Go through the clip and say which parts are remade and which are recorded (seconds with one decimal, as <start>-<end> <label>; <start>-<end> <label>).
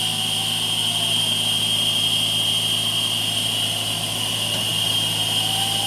0.0-5.9 recorded